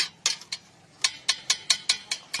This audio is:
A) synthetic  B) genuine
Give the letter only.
B